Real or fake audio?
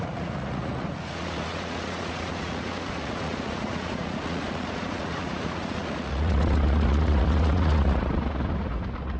fake